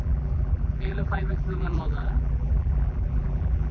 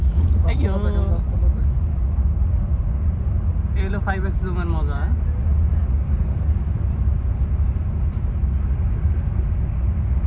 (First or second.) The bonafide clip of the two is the second